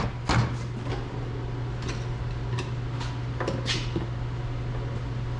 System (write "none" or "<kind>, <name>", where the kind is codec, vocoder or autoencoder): none